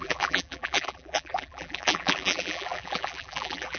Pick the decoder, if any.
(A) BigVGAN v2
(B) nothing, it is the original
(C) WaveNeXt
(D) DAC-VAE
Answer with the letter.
A